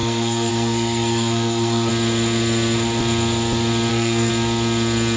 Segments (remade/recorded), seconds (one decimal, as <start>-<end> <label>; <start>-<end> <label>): 0.0-1.9 remade; 1.9-3.9 recorded; 3.9-4.3 remade; 4.3-5.2 recorded